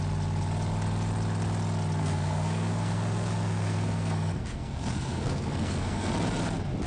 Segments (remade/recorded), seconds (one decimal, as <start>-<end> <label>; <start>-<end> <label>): 0.0-2.0 recorded; 2.0-6.1 remade; 6.1-6.9 recorded